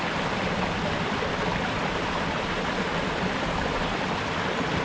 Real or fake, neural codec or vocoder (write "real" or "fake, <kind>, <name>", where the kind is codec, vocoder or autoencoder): real